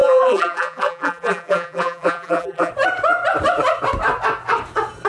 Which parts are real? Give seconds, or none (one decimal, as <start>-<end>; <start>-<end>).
2.7-5.1